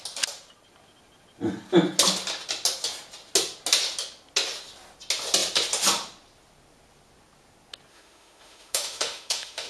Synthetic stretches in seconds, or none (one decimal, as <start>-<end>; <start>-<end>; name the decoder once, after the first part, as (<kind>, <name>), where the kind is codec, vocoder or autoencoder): 7.9-9.7 (autoencoder, DAC-VAE)